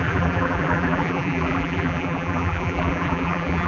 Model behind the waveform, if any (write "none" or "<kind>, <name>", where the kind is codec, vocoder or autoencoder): vocoder, BigVGAN v2